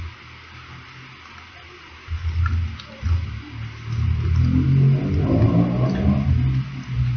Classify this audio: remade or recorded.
recorded